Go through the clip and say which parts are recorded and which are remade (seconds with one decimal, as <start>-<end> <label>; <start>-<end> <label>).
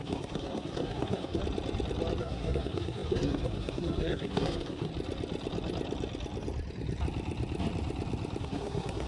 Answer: 0.0-1.4 remade; 1.4-2.2 recorded; 2.2-4.9 remade; 4.9-8.4 recorded; 8.4-9.1 remade